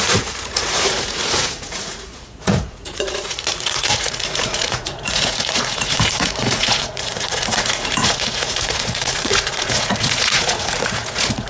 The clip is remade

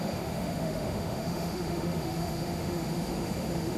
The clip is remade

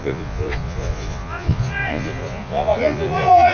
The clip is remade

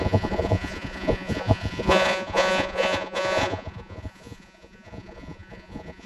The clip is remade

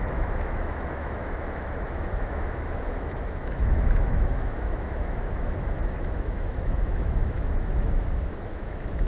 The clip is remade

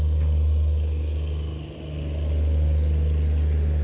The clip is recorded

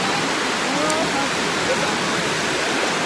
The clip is recorded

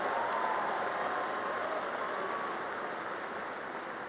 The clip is recorded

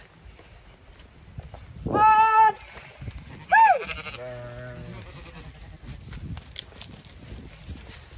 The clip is recorded